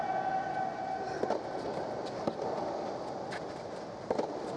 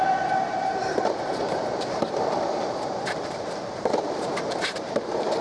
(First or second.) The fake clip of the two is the second